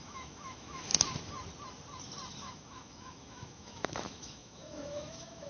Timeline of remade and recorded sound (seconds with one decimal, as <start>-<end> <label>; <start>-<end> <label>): 0.0-0.9 remade; 0.9-2.4 recorded; 2.4-5.5 remade